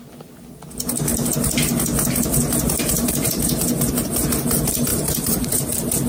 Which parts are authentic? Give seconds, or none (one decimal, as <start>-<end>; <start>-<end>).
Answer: 0.0-4.9